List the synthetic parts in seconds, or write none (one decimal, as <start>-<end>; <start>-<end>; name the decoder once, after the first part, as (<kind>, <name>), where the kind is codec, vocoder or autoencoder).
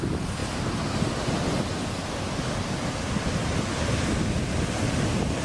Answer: none